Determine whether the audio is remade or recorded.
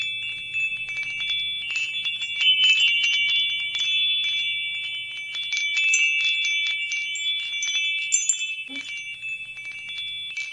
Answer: recorded